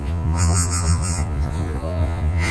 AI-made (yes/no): yes